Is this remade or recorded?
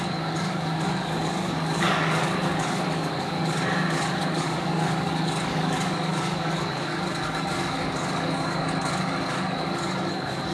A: remade